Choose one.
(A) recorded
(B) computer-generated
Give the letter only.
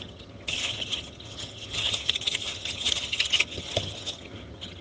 B